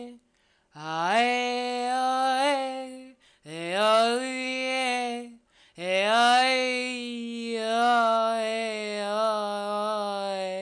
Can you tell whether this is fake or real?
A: real